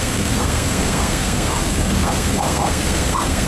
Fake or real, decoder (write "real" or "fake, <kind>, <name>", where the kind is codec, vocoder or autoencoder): fake, codec, SNAC